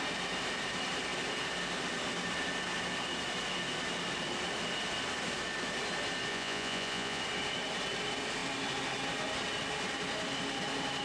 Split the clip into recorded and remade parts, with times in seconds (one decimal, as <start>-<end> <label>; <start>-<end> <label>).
0.0-6.3 recorded; 6.3-7.2 remade; 7.2-11.0 recorded